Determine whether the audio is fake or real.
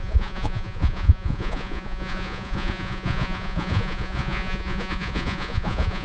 fake